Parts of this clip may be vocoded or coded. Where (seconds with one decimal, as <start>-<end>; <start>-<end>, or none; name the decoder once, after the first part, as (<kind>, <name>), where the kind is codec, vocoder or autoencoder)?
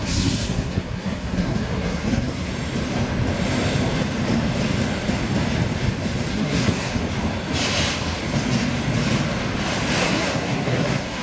0.0-2.5 (codec, SNAC); 6.3-7.0; 10.0-11.2